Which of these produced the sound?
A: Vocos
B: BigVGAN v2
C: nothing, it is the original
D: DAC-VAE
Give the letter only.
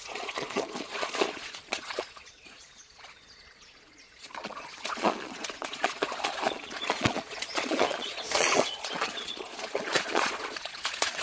A